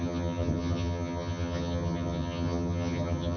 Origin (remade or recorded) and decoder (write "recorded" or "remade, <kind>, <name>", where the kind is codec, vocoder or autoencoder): remade, vocoder, HiFi-GAN